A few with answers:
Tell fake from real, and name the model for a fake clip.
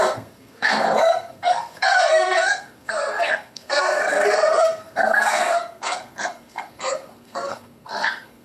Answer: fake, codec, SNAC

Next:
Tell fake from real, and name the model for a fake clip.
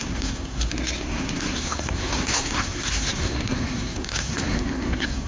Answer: fake, codec, SNAC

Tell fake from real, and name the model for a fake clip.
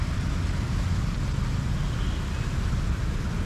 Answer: real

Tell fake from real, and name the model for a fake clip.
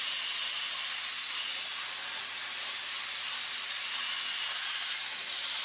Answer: real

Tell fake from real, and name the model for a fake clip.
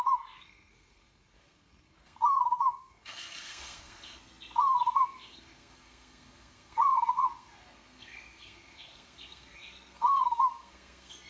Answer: fake, codec, SNAC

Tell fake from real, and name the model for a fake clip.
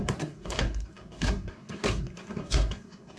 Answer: fake, codec, SNAC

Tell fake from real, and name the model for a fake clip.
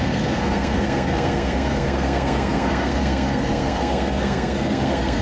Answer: fake, codec, SNAC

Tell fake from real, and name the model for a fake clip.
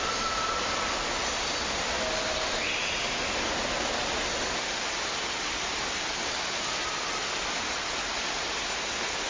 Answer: real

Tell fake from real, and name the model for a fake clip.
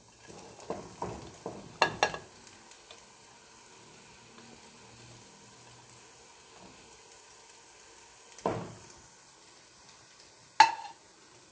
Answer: real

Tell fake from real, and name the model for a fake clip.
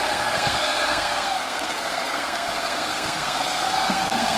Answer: fake, codec, SNAC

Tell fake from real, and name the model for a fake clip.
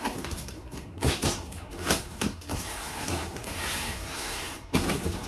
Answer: fake, codec, SNAC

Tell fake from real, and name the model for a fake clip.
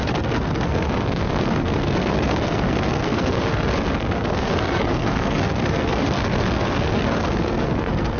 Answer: fake, codec, SNAC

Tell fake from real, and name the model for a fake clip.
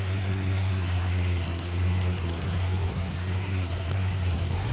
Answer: fake, codec, SNAC